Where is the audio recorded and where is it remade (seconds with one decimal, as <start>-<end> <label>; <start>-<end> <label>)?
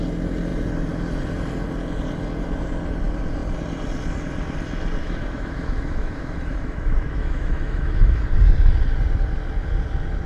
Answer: 0.0-5.0 recorded; 5.0-8.2 remade; 8.2-10.3 recorded